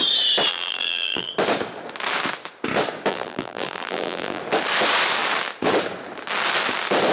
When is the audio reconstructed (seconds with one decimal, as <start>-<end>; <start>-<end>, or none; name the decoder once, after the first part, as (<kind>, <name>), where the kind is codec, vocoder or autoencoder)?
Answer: 0.5-1.3 (vocoder, BigVGAN v2); 3.1-4.4